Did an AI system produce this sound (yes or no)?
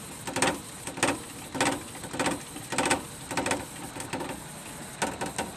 no